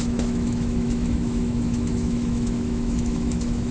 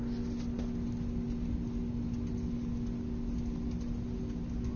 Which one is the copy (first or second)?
first